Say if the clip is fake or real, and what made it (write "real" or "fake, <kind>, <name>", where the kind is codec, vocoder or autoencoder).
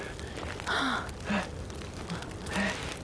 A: real